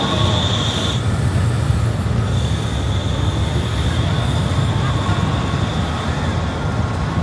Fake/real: real